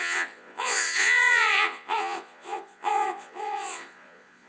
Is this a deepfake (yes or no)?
yes